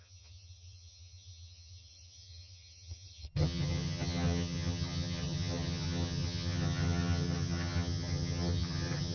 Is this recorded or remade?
remade